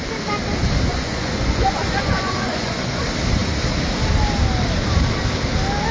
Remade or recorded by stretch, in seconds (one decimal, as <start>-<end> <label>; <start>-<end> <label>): 0.0-0.9 recorded; 0.9-3.0 remade; 3.0-5.9 recorded